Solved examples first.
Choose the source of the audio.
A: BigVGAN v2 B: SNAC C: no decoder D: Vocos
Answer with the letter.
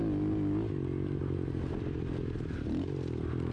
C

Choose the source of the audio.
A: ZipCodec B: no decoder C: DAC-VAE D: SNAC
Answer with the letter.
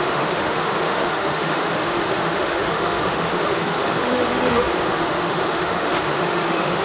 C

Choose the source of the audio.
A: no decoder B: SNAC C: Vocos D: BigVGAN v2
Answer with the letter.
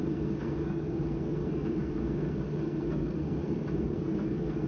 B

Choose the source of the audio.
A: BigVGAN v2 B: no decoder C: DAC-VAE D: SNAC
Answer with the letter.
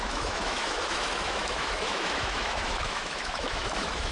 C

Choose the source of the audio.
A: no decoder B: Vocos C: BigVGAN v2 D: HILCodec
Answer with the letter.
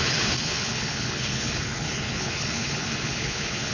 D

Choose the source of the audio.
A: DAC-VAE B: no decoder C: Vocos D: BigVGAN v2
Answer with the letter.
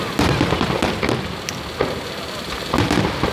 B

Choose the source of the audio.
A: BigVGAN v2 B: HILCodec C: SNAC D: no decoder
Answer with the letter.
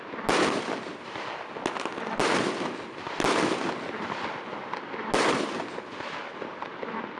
D